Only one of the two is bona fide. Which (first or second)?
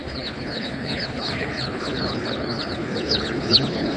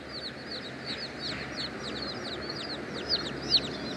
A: second